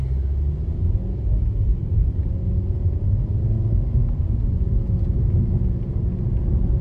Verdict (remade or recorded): recorded